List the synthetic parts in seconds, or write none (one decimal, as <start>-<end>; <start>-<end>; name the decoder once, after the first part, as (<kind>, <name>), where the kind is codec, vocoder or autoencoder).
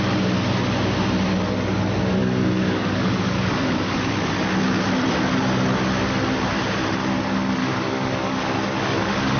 2.2-4.0 (codec, DAC); 7.6-9.4